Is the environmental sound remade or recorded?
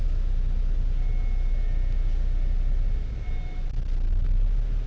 recorded